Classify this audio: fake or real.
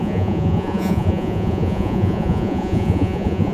fake